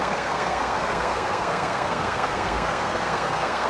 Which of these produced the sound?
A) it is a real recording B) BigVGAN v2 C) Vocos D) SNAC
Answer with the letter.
D